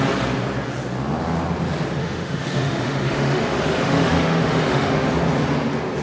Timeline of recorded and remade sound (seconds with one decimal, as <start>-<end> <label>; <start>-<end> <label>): 0.0-2.0 recorded; 2.0-5.1 remade; 5.1-6.0 recorded